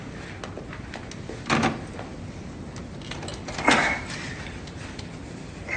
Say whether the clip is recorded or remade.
recorded